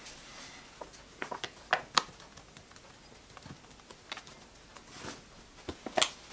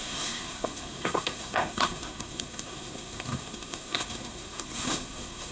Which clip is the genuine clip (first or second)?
first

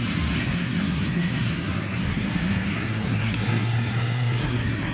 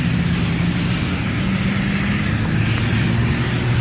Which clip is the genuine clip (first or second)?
second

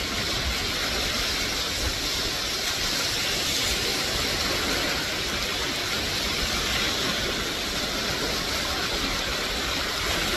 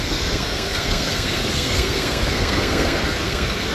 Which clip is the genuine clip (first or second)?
first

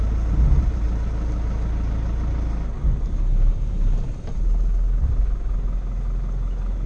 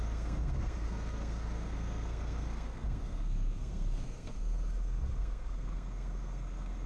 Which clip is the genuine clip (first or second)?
first